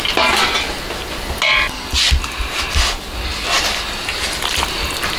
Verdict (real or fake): real